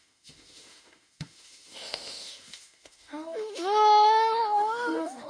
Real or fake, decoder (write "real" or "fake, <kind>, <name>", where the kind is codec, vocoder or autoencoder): fake, autoencoder, DAC-VAE